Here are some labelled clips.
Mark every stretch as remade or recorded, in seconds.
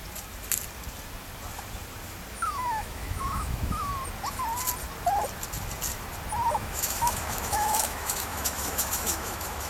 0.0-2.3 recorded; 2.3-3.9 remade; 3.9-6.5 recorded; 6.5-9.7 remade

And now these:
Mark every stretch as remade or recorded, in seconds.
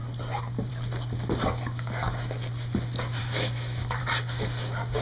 0.0-3.2 recorded; 3.2-4.0 remade; 4.0-5.0 recorded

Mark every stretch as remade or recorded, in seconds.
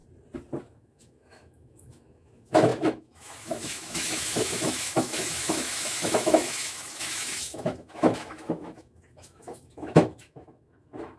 0.0-0.6 recorded; 0.6-11.2 remade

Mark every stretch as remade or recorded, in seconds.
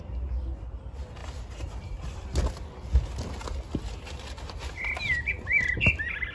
0.0-6.3 recorded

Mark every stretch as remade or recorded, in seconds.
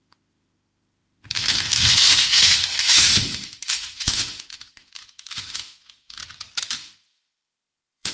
0.0-6.2 remade; 6.2-6.7 recorded; 6.7-8.1 remade